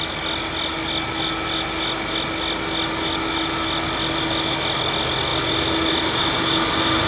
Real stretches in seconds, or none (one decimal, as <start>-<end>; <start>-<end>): 0.0-7.1

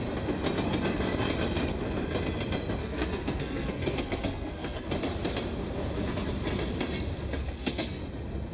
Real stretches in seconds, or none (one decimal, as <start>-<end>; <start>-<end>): 0.0-2.8; 4.9-7.4; 8.0-8.5

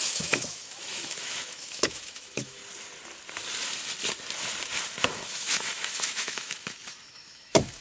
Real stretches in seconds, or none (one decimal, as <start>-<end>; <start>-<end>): 2.6-5.0

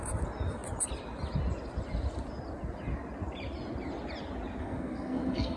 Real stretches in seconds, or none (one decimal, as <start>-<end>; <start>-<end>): 0.0-4.6

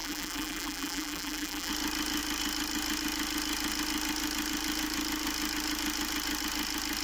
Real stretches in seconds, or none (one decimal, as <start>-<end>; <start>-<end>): 1.7-7.0

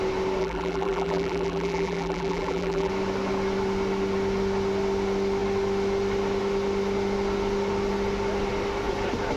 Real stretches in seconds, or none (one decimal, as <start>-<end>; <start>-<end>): 0.0-0.4; 2.9-9.4